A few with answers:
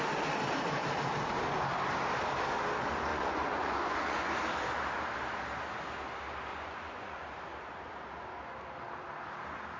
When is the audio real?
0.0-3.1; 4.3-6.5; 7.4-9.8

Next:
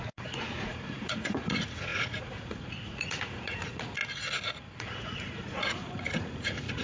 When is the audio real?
4.0-4.8

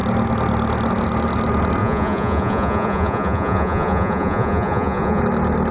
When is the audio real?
0.0-1.8; 5.2-5.7

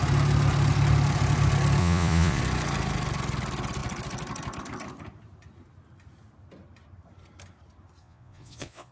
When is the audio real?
0.0-1.8; 2.4-8.0